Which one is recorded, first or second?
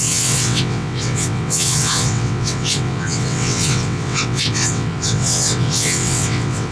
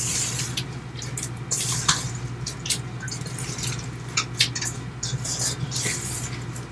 second